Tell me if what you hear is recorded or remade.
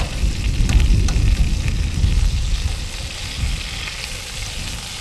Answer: recorded